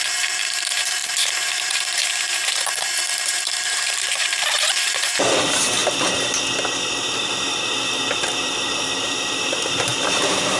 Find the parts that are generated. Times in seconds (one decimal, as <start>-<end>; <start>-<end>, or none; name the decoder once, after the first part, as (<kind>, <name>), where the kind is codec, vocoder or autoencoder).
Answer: 0.0-5.8 (vocoder, BigVGAN v2); 7.0-10.6